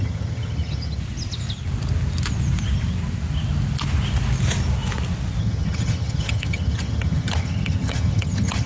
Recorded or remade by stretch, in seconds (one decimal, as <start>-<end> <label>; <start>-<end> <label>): 0.0-1.0 remade; 1.0-5.4 recorded; 5.4-8.7 remade